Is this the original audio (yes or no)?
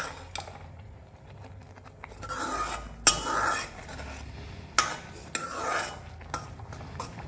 yes